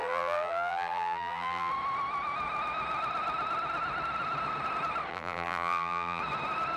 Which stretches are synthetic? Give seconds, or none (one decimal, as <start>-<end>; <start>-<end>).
0.0-1.7; 5.1-6.2